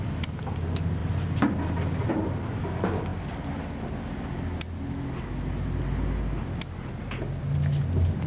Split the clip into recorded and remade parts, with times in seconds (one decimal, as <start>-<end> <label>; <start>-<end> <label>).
0.0-8.3 recorded